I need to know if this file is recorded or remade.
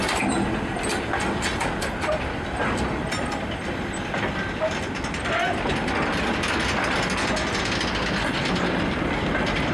recorded